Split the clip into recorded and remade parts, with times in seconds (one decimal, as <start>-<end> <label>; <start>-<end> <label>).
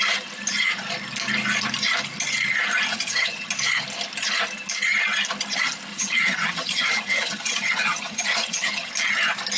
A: 0.0-2.9 recorded; 2.9-3.5 remade; 3.5-5.9 recorded; 5.9-8.9 remade; 8.9-9.6 recorded